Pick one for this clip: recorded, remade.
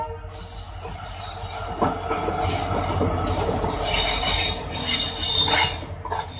recorded